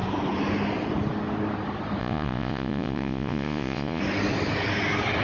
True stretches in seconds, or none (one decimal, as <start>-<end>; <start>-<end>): 0.0-2.0; 4.0-5.2